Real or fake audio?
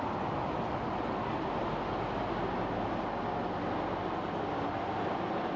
real